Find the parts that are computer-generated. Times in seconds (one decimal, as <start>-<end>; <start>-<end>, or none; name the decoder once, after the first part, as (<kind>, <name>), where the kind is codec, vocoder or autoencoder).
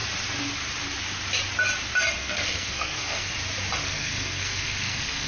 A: 2.2-3.3 (codec, SNAC); 3.8-5.3